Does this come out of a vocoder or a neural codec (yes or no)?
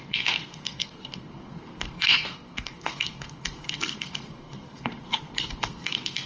yes